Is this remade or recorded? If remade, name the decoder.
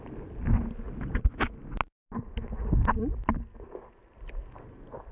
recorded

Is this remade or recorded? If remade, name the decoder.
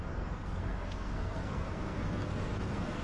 remade, codec, SNAC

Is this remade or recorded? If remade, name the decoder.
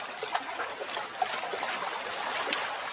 recorded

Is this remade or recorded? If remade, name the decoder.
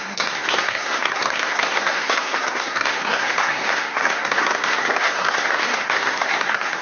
remade, codec, SNAC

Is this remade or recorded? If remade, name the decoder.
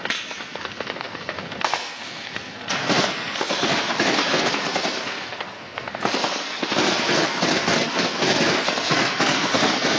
remade, codec, SNAC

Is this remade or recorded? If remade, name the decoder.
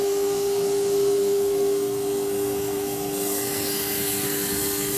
remade, codec, SNAC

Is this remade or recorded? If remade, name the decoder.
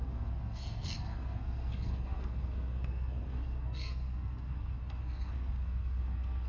remade, codec, SNAC